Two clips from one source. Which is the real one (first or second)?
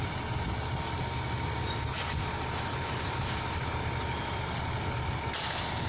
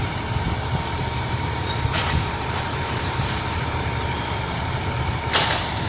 first